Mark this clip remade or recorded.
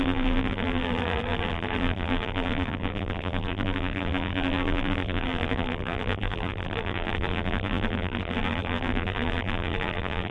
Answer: remade